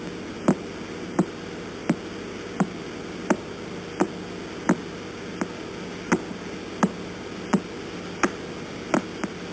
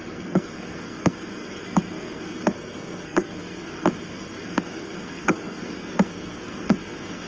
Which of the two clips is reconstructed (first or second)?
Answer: second